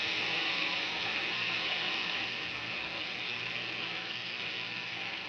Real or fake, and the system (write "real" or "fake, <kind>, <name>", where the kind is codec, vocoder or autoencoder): fake, codec, SNAC